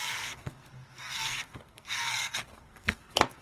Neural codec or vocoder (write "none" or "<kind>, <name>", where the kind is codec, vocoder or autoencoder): codec, SNAC